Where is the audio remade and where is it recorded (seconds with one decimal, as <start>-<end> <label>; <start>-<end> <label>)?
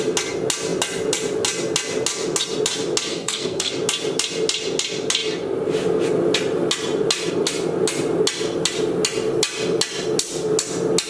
0.0-3.1 recorded; 3.1-3.7 remade; 3.7-11.1 recorded